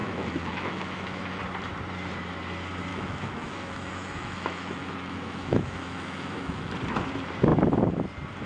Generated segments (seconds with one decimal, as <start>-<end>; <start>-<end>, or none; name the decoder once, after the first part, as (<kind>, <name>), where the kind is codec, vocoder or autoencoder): 0.0-1.4 (autoencoder, DAC-VAE); 2.9-6.7